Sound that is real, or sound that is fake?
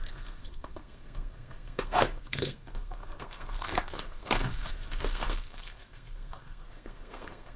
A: fake